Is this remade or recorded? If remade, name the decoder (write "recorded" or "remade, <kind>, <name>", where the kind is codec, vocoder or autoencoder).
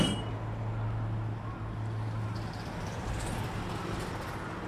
recorded